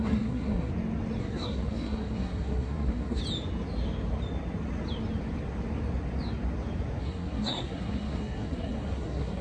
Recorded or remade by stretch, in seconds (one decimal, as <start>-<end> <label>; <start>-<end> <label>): 0.0-0.7 remade; 0.7-1.2 recorded; 1.2-3.2 remade; 3.2-7.0 recorded; 7.0-9.4 remade